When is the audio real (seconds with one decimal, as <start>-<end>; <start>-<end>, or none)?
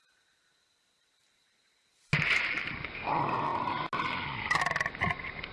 0.0-5.5